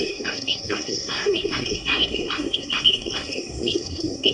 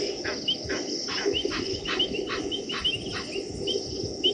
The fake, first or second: first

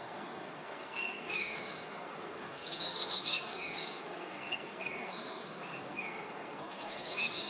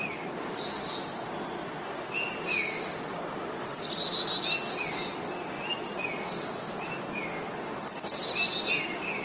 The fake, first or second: first